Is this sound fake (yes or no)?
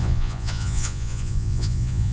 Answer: yes